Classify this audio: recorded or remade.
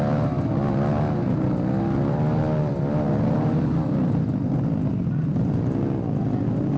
recorded